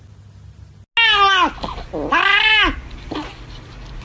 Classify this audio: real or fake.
real